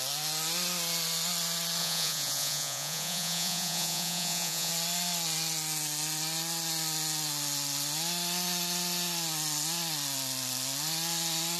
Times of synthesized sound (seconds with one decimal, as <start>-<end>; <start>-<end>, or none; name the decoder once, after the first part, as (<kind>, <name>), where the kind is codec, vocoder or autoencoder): 1.8-4.7 (vocoder, Vocos)